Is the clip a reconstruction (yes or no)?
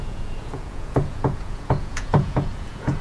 yes